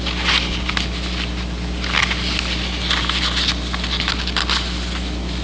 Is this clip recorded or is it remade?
recorded